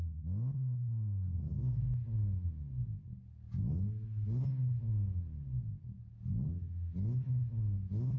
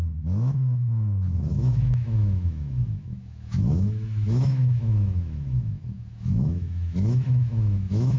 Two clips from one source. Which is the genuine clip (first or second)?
first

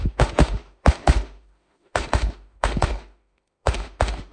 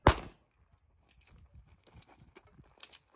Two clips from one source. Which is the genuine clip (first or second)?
second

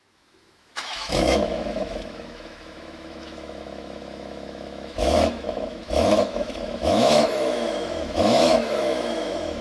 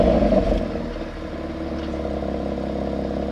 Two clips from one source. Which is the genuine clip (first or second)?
second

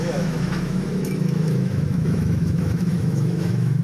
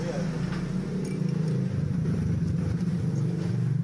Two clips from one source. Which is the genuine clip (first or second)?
second